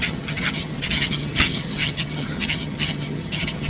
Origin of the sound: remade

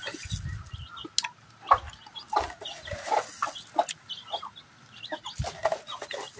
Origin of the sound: recorded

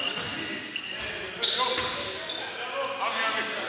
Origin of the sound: recorded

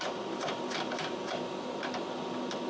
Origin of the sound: recorded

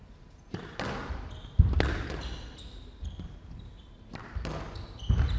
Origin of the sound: recorded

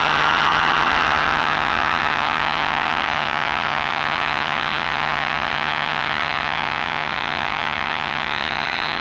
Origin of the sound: remade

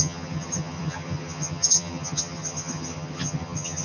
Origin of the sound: remade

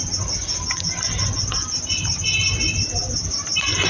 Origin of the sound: recorded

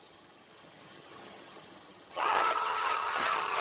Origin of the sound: remade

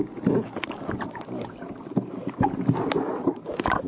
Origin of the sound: recorded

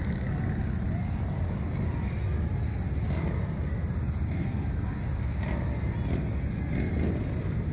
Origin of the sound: recorded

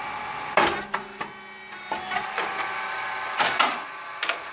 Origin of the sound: recorded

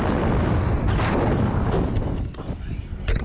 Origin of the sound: recorded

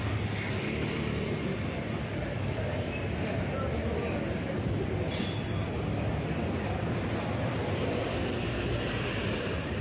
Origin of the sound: recorded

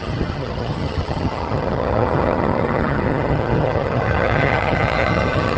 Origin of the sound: remade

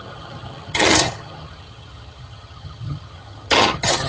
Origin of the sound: remade